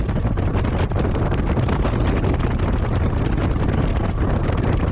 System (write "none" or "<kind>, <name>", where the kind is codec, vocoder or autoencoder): none